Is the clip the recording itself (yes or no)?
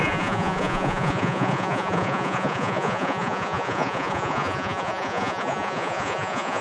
no